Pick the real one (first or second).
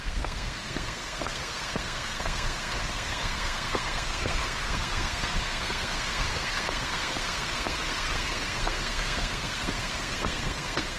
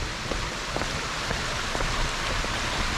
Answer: second